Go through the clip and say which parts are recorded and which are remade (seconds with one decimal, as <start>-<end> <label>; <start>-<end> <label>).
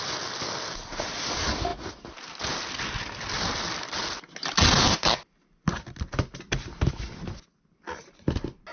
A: 0.0-8.7 recorded